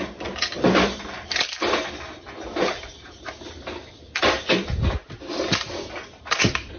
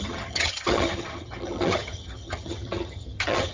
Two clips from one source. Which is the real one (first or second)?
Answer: first